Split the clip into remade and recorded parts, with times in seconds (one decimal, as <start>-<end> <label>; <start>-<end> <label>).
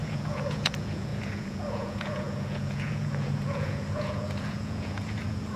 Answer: 0.0-5.6 remade